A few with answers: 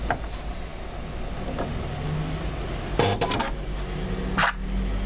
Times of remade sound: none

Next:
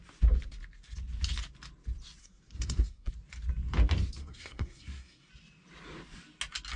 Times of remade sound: 2.2-3.1 (codec, SNAC); 4.2-5.3

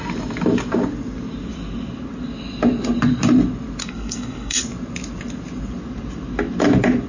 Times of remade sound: 3.8-4.6 (codec, SNAC)

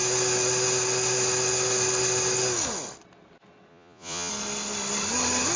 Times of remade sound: 3.7-4.3 (vocoder, Vocos)